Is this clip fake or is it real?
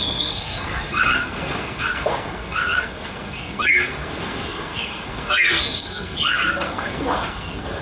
fake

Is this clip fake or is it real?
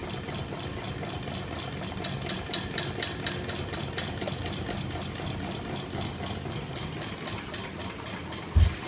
real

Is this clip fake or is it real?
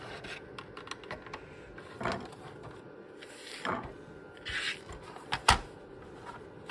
real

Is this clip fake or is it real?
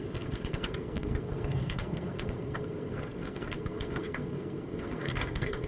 fake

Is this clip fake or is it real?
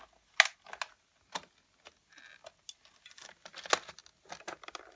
real